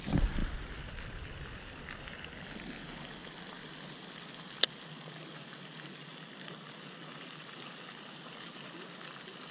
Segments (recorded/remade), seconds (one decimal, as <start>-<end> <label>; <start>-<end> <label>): 0.0-9.5 recorded